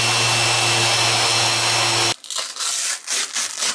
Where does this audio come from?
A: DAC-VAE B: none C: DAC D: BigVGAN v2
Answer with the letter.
B